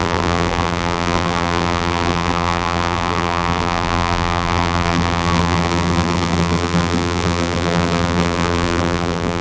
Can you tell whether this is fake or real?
fake